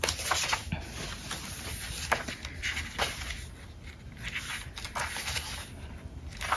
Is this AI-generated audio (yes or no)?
no